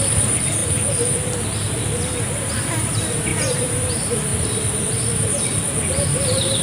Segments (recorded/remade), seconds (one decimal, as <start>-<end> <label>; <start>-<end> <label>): 0.0-6.6 remade

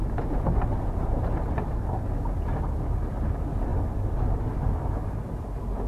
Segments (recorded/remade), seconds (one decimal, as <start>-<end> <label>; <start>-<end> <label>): 0.0-2.0 remade; 2.0-5.9 recorded

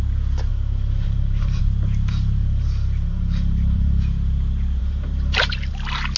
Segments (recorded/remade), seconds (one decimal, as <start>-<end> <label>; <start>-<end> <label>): 0.0-0.5 recorded; 0.5-1.6 remade; 1.6-2.4 recorded; 2.4-4.0 remade; 4.0-4.8 recorded; 4.8-5.7 remade; 5.7-6.2 recorded

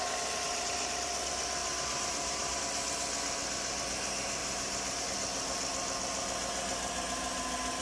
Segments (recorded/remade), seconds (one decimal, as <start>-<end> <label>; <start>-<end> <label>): 0.0-1.6 recorded; 1.6-2.6 remade; 2.6-4.4 recorded; 4.4-5.0 remade; 5.0-7.8 recorded